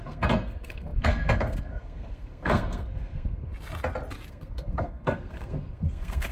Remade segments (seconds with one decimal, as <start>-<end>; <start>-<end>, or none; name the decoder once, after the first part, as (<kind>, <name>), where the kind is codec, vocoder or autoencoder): 0.0-3.5 (codec, SNAC); 4.3-6.3